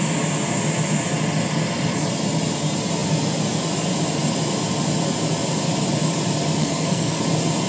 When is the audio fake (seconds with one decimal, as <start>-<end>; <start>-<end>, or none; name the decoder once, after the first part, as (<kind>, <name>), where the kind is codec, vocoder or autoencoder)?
6.6-7.2 (codec, SNAC)